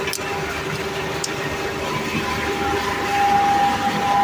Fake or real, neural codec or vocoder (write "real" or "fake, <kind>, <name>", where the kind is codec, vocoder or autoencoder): real